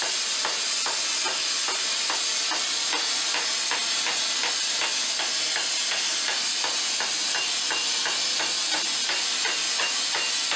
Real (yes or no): yes